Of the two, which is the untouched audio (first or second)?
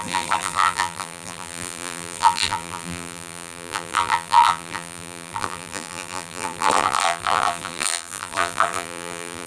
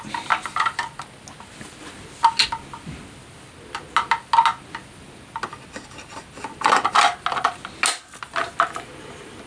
second